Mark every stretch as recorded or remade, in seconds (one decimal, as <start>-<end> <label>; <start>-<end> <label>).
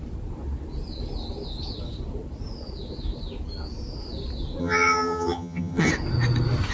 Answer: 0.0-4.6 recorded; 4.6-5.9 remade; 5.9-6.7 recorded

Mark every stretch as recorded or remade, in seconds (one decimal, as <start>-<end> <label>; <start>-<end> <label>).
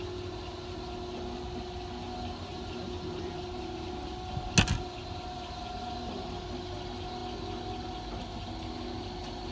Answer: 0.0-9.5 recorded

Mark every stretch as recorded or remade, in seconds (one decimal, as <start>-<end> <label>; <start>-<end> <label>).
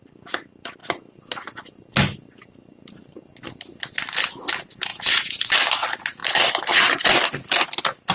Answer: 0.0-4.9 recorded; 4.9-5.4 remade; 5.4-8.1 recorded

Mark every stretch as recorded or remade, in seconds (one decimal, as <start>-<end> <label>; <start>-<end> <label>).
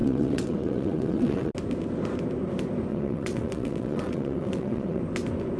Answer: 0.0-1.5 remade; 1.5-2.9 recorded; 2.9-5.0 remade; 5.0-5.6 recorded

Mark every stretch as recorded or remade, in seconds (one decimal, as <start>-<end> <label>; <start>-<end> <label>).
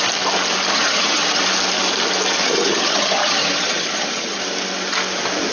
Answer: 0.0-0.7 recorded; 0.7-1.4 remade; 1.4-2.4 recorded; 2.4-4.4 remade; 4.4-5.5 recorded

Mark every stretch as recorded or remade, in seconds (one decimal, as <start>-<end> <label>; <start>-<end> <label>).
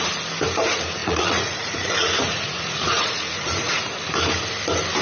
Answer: 0.0-1.0 recorded; 1.0-3.8 remade; 3.8-5.0 recorded